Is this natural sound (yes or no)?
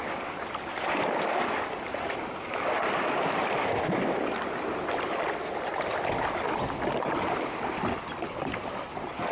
yes